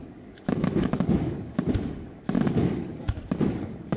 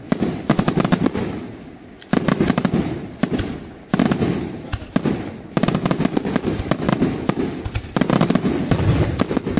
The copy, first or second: first